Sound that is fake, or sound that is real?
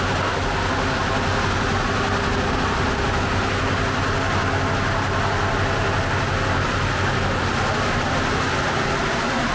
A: real